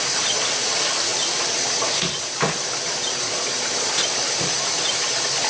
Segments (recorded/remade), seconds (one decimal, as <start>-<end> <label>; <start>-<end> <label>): 0.0-1.1 recorded; 1.1-4.4 remade; 4.4-5.5 recorded